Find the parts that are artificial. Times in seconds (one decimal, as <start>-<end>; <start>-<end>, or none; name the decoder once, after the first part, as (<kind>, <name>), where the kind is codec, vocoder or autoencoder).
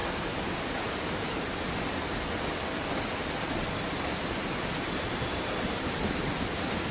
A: none